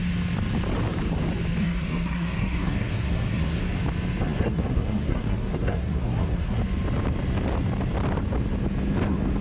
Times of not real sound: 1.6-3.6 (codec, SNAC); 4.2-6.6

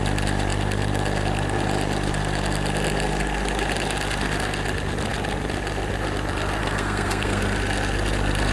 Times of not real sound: 6.6-7.4 (codec, SNAC)